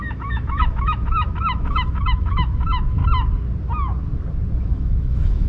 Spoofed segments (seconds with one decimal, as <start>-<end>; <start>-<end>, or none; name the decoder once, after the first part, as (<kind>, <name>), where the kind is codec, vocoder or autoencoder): 0.0-3.0 (autoencoder, DAC-VAE); 4.6-5.5